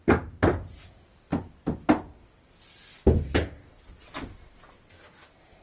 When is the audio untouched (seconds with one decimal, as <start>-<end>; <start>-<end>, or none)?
0.0-5.6